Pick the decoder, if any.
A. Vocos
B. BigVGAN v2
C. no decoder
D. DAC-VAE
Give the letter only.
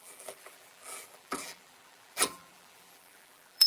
B